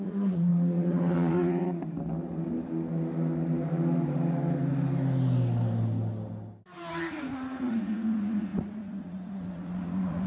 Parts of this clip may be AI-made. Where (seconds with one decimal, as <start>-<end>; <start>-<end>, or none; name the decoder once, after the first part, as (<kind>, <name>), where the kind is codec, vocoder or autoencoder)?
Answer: 0.0-1.8 (vocoder, Vocos); 6.9-10.3